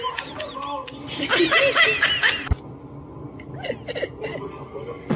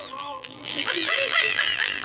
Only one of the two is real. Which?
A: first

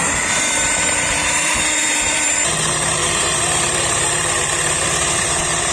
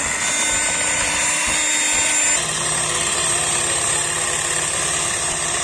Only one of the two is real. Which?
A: second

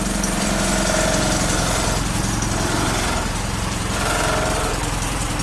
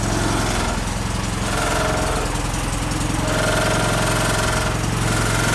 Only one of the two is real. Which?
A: second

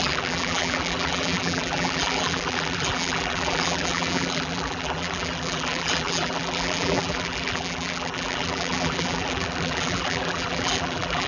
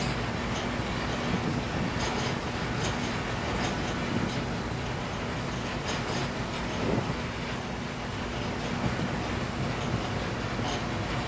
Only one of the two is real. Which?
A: second